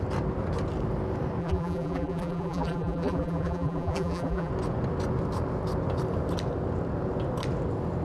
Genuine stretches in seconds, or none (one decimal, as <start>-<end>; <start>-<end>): 0.0-1.4; 4.5-8.0